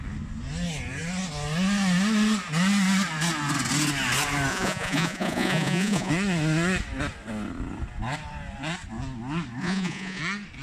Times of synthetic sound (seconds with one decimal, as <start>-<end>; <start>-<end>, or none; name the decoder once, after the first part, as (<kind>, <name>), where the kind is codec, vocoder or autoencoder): 4.5-6.1 (vocoder, Vocos); 9.6-10.2

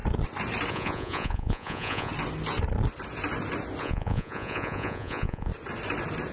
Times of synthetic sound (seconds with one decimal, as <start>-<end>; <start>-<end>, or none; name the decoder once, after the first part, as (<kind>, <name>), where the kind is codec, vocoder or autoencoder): 0.7-2.1 (vocoder, Vocos); 3.8-5.5

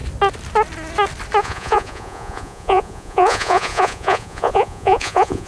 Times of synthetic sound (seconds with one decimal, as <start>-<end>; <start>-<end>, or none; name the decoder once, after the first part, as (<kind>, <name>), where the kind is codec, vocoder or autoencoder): 1.4-5.5 (vocoder, Vocos)

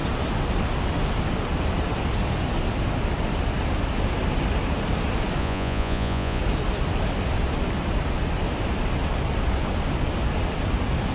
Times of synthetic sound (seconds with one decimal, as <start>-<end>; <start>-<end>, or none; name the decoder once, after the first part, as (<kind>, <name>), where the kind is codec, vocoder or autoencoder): 5.4-6.4 (vocoder, Vocos)